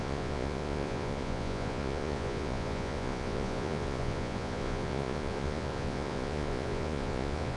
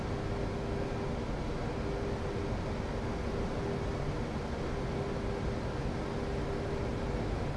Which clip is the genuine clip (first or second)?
second